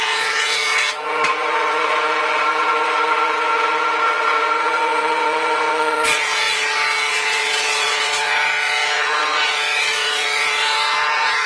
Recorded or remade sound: remade